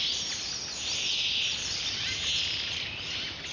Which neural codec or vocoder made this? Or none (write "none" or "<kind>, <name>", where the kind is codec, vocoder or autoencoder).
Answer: none